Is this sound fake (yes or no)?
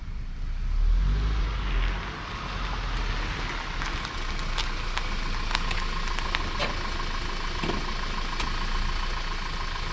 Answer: no